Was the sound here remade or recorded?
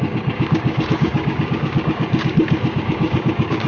remade